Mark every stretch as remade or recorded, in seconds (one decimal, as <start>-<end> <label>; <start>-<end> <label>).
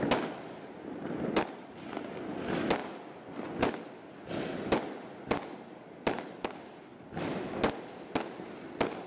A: 0.0-9.1 recorded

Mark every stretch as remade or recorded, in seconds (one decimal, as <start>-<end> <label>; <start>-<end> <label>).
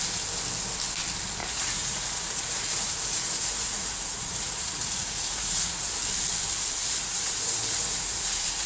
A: 0.0-1.4 recorded; 1.4-5.9 remade; 5.9-6.8 recorded; 6.8-8.7 remade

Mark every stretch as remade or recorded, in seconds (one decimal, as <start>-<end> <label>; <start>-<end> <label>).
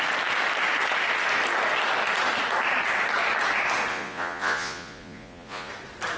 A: 0.0-3.9 recorded; 3.9-5.7 remade; 5.7-6.2 recorded